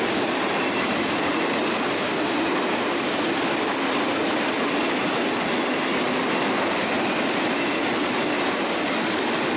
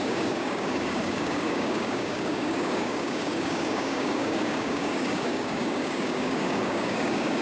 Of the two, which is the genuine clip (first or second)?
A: first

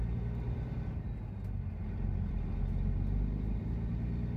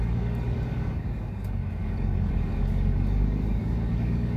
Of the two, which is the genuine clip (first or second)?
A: first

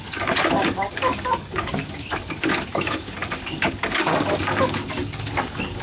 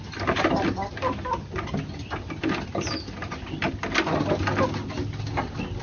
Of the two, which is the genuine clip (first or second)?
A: second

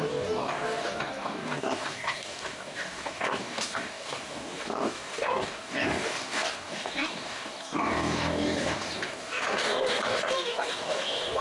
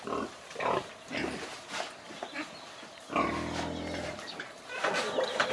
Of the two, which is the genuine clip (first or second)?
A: second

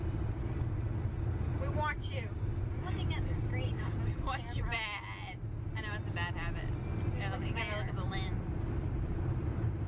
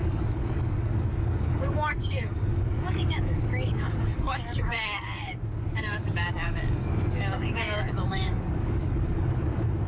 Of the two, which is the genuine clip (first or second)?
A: first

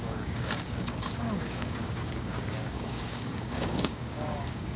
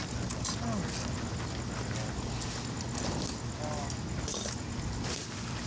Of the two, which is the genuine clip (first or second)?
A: second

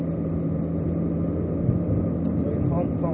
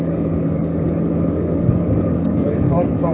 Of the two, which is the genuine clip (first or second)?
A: first